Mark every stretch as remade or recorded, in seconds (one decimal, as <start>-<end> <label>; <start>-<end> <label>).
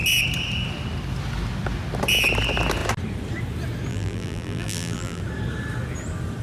0.0-3.9 recorded; 3.9-5.2 remade; 5.2-6.4 recorded